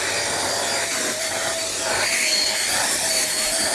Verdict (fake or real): real